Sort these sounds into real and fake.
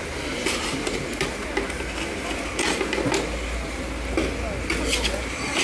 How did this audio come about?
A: real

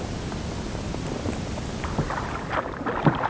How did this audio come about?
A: real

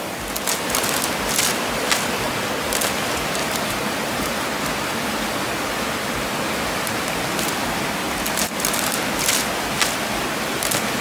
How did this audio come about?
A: real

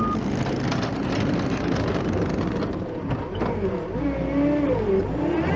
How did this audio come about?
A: real